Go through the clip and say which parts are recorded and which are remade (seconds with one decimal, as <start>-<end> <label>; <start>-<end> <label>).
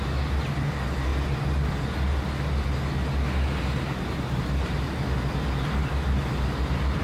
0.0-5.8 recorded; 5.8-7.0 remade